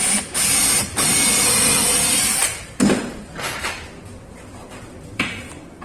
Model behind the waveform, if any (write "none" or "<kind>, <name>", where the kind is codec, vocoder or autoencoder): vocoder, BigVGAN v2